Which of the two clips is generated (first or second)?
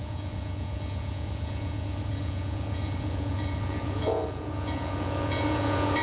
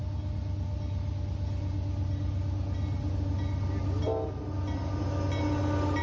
first